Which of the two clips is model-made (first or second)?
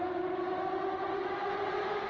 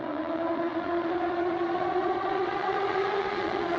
second